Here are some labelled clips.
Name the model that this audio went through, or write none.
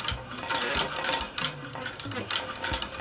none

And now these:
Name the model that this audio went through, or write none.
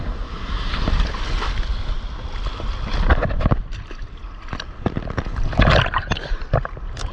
none